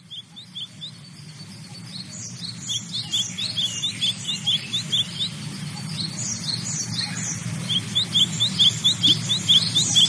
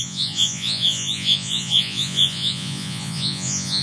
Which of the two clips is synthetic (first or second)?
second